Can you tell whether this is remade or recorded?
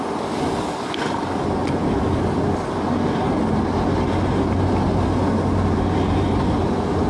recorded